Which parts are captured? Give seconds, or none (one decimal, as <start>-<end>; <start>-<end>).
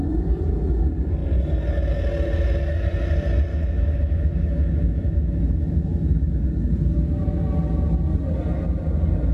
0.0-3.5; 6.5-9.3